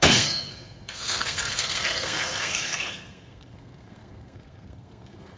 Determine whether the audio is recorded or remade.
remade